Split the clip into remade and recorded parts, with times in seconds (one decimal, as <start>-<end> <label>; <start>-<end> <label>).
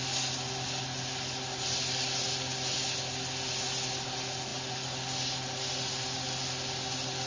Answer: 0.0-7.3 recorded